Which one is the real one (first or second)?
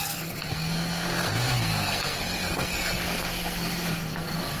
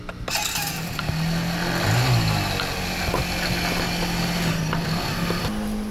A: second